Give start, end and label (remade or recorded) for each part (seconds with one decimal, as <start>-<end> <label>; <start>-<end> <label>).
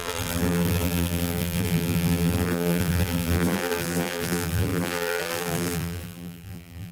0.0-6.9 remade